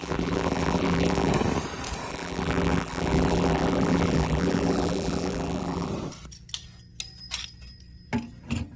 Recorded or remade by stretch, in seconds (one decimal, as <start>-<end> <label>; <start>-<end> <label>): 0.0-1.3 remade; 1.3-2.1 recorded; 2.1-5.9 remade; 5.9-8.8 recorded